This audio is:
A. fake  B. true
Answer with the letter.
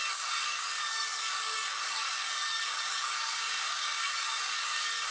A